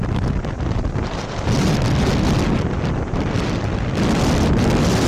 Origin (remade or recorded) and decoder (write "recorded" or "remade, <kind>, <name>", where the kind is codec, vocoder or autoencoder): recorded